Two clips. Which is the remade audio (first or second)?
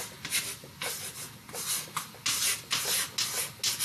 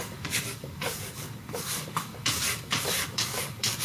second